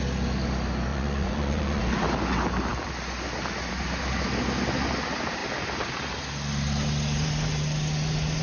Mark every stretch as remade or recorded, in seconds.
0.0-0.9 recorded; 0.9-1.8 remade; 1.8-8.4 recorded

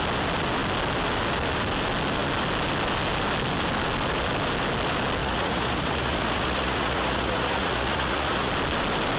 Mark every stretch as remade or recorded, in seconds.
0.0-5.2 recorded; 5.2-8.5 remade; 8.5-9.2 recorded

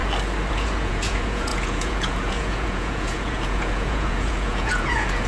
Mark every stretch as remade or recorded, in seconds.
0.0-0.5 recorded; 0.5-5.3 remade

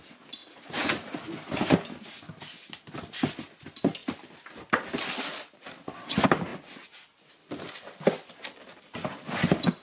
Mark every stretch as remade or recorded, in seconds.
0.0-0.4 recorded; 0.4-1.2 remade; 1.2-9.8 recorded

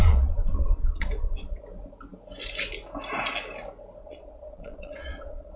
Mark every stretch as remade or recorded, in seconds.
0.0-1.6 remade; 1.6-4.0 recorded; 4.0-5.6 remade

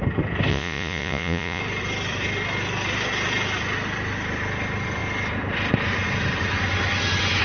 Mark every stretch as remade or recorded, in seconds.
0.0-0.5 recorded; 0.5-1.6 remade; 1.6-7.4 recorded

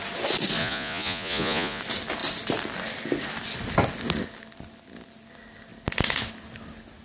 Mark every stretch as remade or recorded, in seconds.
0.0-0.6 recorded; 0.6-1.8 remade; 1.8-7.0 recorded